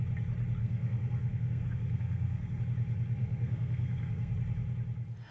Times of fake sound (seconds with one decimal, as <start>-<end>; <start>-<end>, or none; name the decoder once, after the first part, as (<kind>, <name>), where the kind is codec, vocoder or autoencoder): 0.6-2.6 (codec, SNAC); 3.2-4.3